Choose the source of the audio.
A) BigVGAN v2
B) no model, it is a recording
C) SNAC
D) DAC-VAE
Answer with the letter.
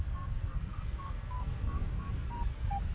C